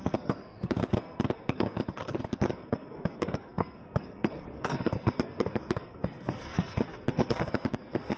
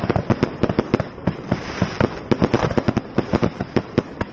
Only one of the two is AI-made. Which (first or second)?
first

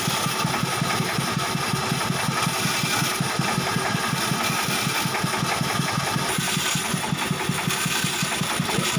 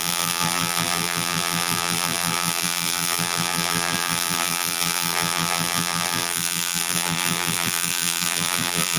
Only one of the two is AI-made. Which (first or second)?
second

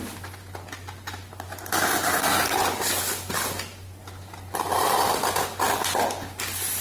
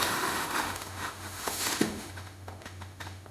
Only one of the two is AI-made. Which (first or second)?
second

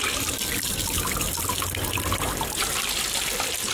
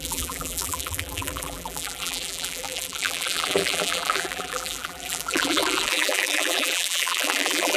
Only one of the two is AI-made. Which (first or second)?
second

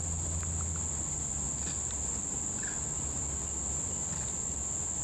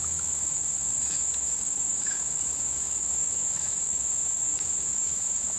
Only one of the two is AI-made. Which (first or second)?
second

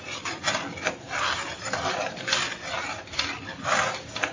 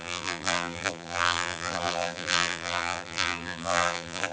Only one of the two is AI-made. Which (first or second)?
second